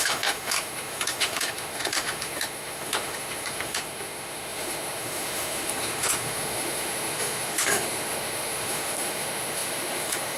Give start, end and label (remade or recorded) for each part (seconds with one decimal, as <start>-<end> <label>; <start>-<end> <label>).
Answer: 0.0-10.4 remade